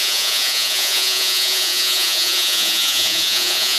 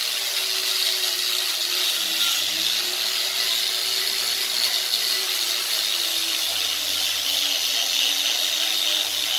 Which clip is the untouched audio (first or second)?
second